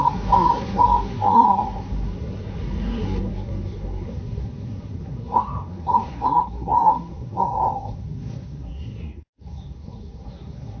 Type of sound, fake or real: fake